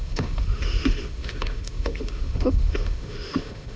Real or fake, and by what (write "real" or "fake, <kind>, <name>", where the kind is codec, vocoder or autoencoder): fake, autoencoder, DAC-VAE